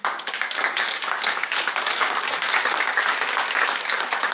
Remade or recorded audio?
remade